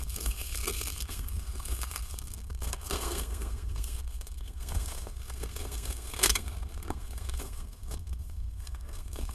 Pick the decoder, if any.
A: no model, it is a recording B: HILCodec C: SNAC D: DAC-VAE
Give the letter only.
C